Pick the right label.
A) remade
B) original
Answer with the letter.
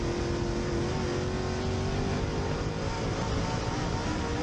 B